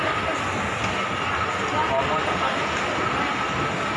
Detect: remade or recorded recorded